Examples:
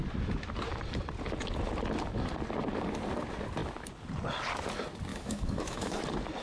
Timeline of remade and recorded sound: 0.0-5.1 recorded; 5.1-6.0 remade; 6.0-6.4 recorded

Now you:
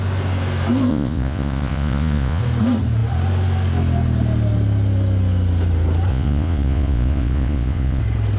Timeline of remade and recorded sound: 0.0-0.9 recorded; 0.9-2.4 remade; 2.4-6.1 recorded; 6.1-8.0 remade; 8.0-8.4 recorded